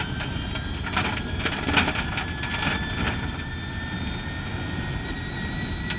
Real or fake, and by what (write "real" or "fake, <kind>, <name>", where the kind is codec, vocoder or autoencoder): real